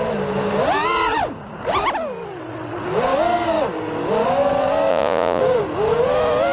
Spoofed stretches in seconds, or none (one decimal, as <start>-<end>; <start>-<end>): 4.9-5.4